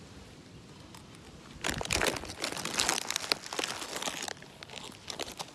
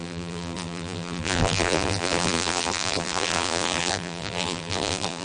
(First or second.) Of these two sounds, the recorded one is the first